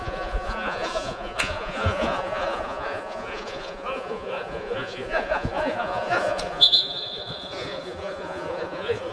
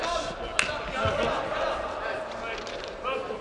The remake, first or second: first